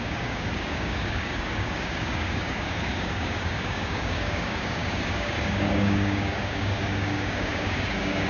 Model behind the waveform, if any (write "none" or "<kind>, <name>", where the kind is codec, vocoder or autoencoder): codec, DAC